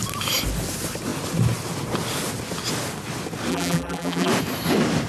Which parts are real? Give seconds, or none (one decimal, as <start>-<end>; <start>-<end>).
0.0-3.5; 4.3-5.1